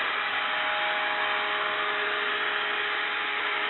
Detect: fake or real real